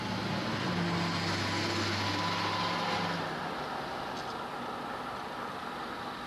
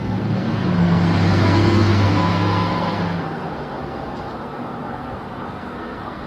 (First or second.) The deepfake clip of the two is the second